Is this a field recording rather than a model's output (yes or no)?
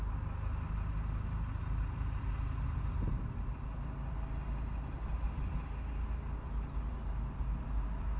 yes